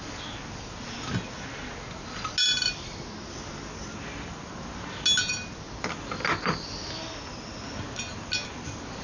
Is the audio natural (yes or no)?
yes